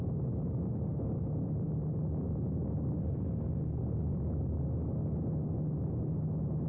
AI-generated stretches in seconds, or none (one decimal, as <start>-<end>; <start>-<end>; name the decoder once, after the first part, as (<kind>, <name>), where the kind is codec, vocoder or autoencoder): none